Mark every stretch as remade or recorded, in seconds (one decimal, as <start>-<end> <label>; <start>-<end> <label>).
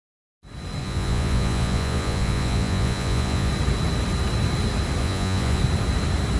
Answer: 0.0-0.8 recorded; 0.8-3.5 remade; 3.5-5.0 recorded; 5.0-5.6 remade; 5.6-6.4 recorded